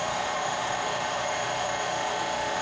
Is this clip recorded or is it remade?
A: remade